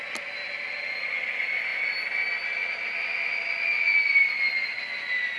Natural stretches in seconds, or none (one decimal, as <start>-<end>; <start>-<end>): 0.0-5.4